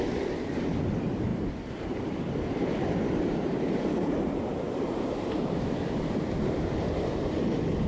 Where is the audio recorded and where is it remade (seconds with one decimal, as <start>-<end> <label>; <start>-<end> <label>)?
0.0-1.3 recorded; 1.3-6.0 remade; 6.0-7.9 recorded